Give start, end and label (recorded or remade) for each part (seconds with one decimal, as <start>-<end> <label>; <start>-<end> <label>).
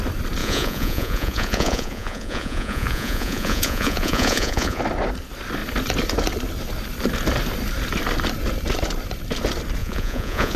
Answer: 0.0-0.4 recorded; 0.4-4.8 remade; 4.8-9.8 recorded; 9.8-10.6 remade